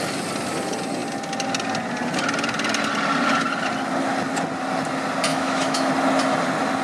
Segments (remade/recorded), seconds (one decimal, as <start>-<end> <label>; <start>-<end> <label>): 0.0-5.3 recorded; 5.3-5.9 remade; 5.9-6.8 recorded